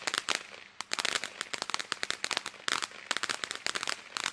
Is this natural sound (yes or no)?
yes